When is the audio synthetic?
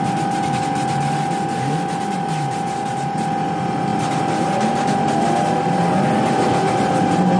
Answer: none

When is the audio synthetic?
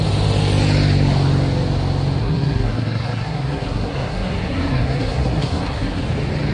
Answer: 2.2-6.0 (codec, SNAC)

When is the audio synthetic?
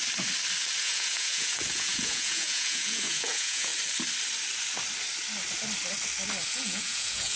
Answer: 0.8-3.7 (vocoder, Vocos); 6.5-7.4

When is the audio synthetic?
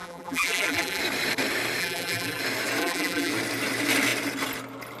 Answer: 0.0-1.0 (vocoder, BigVGAN v2); 1.8-2.4; 2.8-3.3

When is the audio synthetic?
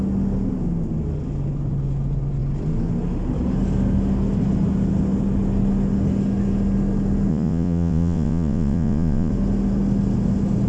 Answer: 7.3-9.3 (vocoder, Vocos)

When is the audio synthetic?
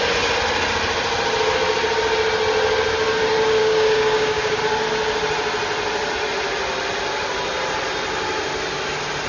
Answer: 3.6-4.6 (codec, DAC)